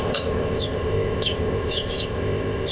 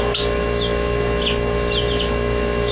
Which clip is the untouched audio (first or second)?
second